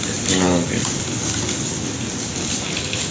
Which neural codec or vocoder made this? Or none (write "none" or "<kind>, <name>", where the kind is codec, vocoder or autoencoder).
none